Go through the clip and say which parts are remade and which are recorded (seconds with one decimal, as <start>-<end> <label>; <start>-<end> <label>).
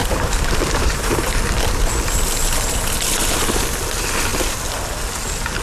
0.0-1.9 remade; 1.9-5.6 recorded